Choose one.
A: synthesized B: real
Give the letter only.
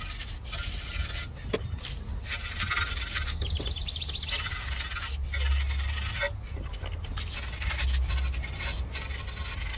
B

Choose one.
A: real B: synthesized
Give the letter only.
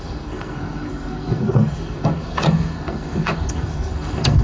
B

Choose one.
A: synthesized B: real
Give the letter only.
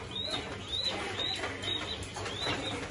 B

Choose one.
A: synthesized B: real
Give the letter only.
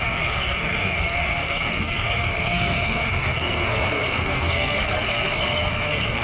A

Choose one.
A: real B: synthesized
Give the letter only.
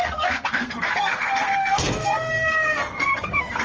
B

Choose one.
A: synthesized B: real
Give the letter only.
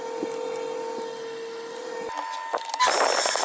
B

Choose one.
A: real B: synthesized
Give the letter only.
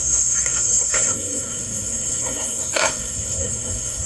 B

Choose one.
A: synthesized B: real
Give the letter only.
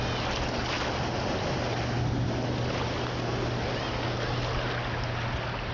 B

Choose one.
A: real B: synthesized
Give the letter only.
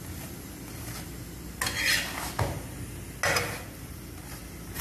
A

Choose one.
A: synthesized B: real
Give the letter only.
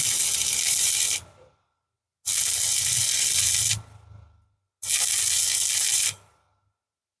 B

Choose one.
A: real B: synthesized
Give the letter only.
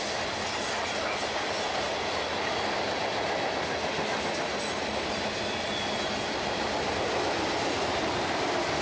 A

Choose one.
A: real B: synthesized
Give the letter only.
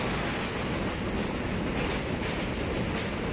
A